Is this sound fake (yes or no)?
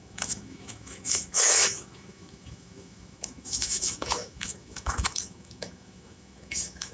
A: yes